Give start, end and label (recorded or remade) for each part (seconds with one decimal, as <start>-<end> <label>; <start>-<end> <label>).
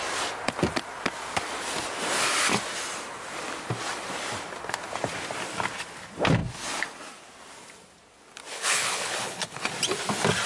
0.0-8.5 recorded; 8.5-9.7 remade; 9.7-10.5 recorded